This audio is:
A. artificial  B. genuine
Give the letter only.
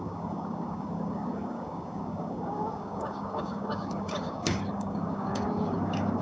A